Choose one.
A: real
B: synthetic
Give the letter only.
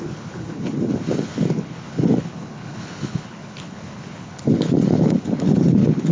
B